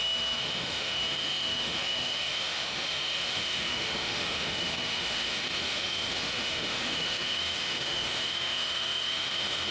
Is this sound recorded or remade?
remade